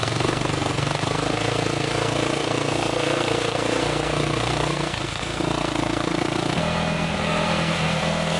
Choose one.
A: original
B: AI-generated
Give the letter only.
B